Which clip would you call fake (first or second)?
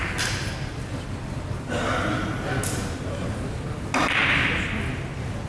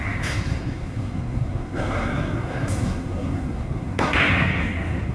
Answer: second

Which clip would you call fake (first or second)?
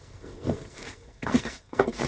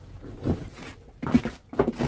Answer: first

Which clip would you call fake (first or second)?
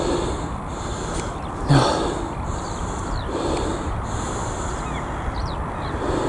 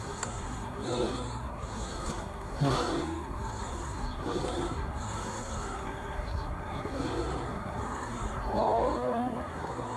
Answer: second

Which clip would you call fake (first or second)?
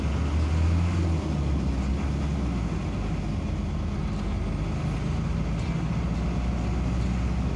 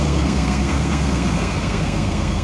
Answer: second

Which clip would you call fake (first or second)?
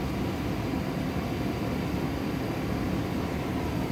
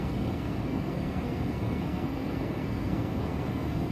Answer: second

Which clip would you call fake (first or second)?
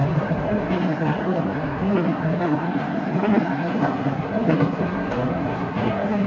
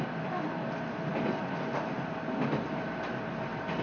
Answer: first